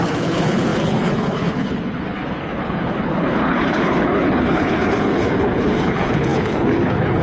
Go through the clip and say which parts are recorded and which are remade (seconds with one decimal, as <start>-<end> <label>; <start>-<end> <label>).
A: 0.0-7.2 remade